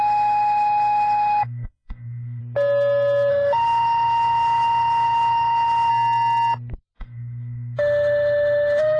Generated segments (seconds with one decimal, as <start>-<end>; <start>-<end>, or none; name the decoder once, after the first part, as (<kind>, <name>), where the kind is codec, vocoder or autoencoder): 0.0-2.4 (autoencoder, DAC-VAE); 3.3-5.9; 7.0-9.0